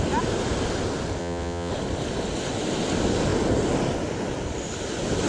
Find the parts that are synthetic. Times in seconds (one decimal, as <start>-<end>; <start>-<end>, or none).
1.2-1.7